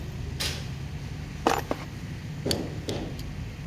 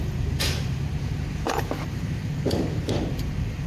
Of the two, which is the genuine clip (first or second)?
first